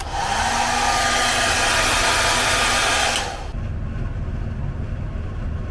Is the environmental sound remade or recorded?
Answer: recorded